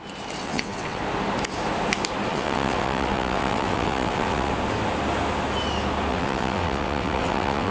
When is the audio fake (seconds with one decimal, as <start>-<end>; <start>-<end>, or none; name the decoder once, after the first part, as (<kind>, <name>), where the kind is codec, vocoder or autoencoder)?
0.4-1.0 (vocoder, WaveNeXt); 2.3-4.5; 6.1-7.7